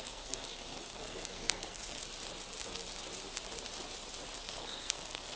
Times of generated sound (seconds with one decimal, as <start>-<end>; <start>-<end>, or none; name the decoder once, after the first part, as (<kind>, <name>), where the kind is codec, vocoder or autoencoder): 0.0-2.0 (codec, SNAC); 4.4-5.4